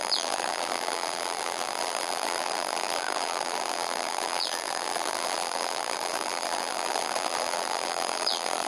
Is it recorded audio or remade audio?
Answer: remade